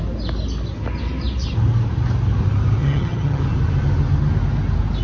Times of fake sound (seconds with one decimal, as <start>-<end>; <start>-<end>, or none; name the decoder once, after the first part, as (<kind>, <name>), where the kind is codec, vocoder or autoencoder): 2.8-3.4 (vocoder, HiFi-GAN)